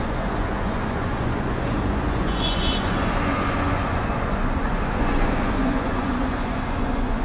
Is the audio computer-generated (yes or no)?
yes